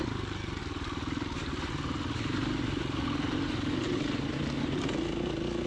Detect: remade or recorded recorded